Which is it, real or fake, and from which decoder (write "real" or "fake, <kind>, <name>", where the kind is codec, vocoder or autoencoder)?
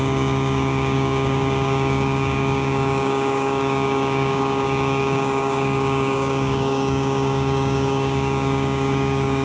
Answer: fake, codec, DAC